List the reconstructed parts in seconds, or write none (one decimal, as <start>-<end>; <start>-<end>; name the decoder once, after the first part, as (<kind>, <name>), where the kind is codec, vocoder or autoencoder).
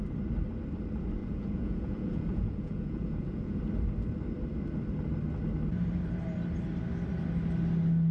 1.2-3.6 (vocoder, Vocos)